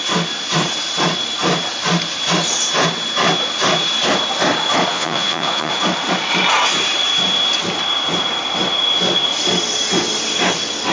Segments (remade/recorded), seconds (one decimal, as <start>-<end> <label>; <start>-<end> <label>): 0.0-4.9 recorded; 4.9-5.7 remade; 5.7-10.9 recorded